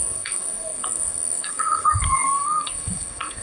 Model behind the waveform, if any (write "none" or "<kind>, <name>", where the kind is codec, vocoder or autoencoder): codec, SNAC